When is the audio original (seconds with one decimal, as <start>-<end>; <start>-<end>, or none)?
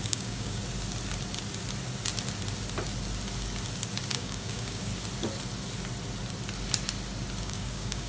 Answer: 0.6-4.1; 4.9-7.4